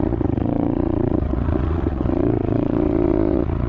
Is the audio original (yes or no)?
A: no